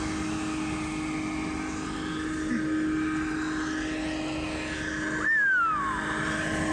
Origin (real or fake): real